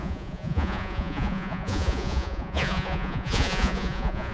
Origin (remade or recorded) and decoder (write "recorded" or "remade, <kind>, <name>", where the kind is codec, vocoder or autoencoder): remade, vocoder, Vocos